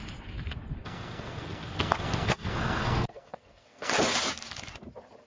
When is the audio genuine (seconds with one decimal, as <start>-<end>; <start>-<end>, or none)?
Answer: 0.0-0.8; 3.9-5.3